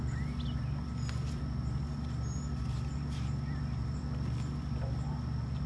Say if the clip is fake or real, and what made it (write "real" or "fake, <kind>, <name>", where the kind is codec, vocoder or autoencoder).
real